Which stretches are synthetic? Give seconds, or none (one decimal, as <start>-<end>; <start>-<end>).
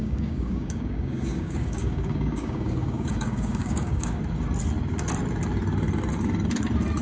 0.0-4.2